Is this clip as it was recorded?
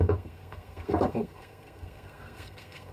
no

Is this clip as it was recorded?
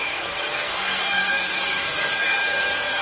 no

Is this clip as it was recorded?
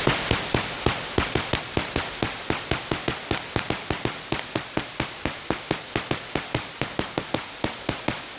yes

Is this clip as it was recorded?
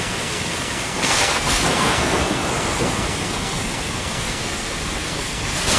no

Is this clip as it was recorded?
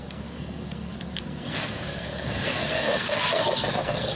no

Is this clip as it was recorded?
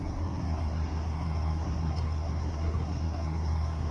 no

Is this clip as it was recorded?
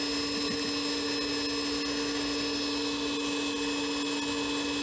yes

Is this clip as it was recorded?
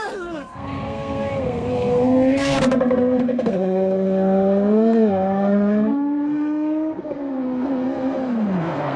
no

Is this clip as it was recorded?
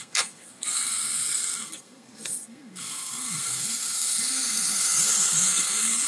no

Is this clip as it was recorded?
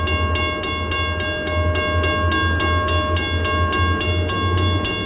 yes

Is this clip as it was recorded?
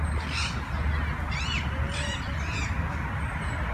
yes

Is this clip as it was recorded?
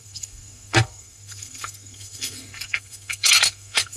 no